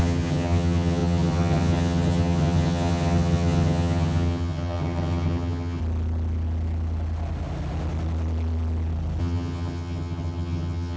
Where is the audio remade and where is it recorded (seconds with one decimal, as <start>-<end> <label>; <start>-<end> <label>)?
0.0-5.8 remade; 5.8-9.2 recorded; 9.2-11.0 remade